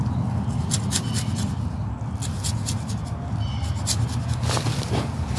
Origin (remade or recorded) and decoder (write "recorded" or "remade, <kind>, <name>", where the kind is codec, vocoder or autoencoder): recorded